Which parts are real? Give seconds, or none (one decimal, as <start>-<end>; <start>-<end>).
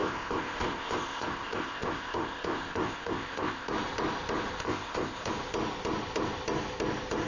3.7-4.6; 5.3-7.3